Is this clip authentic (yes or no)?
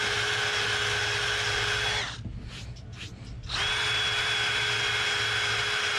yes